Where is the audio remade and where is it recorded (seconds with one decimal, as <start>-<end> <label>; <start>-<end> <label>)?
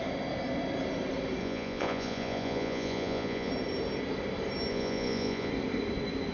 0.0-1.4 recorded; 1.4-3.5 remade; 3.5-4.7 recorded; 4.7-5.5 remade; 5.5-6.3 recorded